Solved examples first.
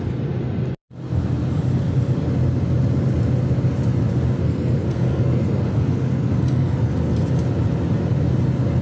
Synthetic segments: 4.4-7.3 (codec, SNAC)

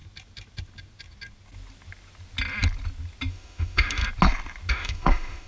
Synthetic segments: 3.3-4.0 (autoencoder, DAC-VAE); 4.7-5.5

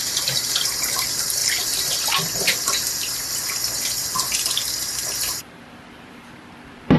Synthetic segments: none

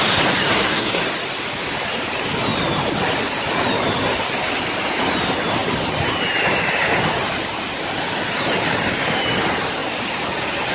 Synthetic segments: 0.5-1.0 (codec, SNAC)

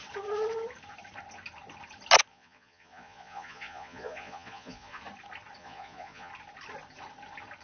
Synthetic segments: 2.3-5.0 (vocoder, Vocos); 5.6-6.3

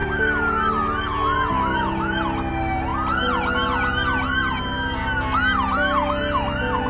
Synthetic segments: none

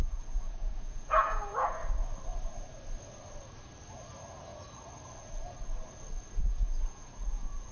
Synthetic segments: 0.0-1.8 (vocoder, Vocos); 6.4-7.7